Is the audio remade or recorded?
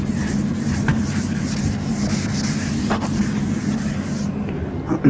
recorded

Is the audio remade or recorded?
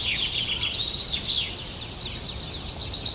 recorded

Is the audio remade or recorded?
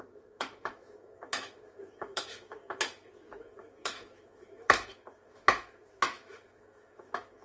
remade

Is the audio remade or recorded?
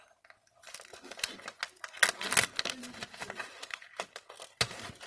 recorded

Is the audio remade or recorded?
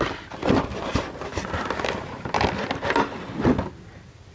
recorded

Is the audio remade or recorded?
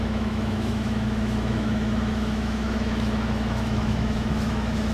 remade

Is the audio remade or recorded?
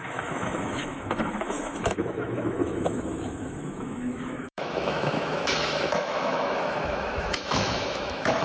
remade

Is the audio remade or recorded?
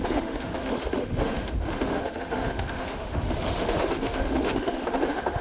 remade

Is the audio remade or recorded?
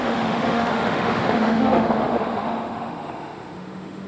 remade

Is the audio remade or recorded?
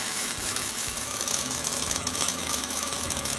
remade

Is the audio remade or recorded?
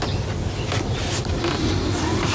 recorded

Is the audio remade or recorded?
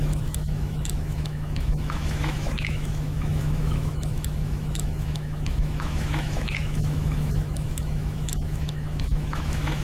remade